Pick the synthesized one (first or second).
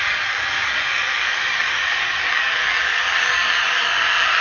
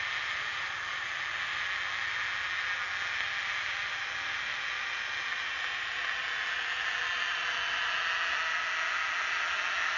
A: first